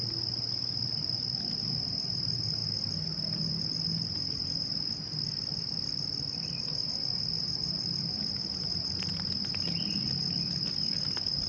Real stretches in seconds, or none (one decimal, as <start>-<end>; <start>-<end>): 0.0-2.6; 3.4-11.5